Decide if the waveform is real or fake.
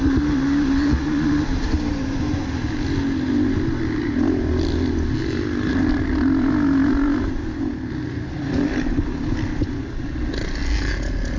real